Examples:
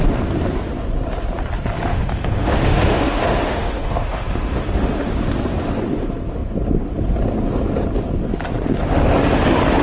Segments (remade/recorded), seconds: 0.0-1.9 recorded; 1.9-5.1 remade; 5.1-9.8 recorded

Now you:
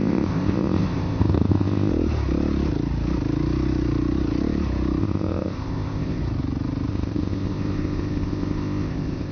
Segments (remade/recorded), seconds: 0.0-1.9 remade; 1.9-5.0 recorded; 5.0-6.2 remade; 6.2-6.9 recorded; 6.9-9.3 remade

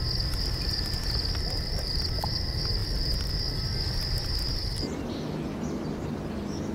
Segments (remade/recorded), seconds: 0.0-6.7 recorded

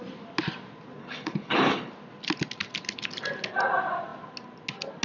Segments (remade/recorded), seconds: 0.0-1.0 recorded; 1.0-1.9 remade; 1.9-5.0 recorded